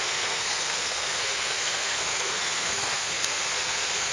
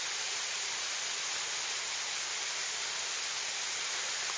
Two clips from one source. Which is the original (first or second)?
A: second